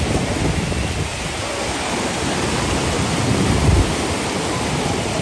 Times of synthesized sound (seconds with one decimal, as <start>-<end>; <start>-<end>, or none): none